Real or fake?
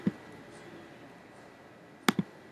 real